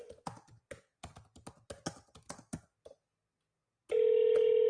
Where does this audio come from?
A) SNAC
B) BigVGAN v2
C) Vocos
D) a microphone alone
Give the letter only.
D